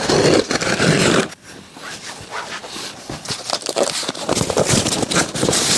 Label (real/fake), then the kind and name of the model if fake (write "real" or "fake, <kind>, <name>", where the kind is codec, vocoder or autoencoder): fake, vocoder, BigVGAN v2